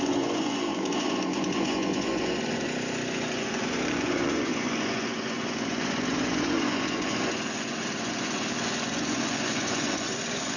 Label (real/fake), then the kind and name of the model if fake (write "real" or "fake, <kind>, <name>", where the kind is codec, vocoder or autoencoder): fake, vocoder, Vocos